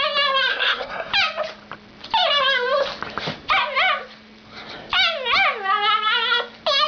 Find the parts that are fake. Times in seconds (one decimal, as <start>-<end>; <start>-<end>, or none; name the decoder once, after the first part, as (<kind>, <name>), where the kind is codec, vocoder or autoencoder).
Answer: 0.5-1.1 (codec, SNAC)